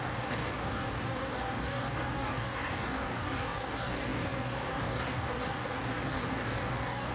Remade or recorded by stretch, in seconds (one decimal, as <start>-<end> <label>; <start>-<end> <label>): 0.0-7.1 remade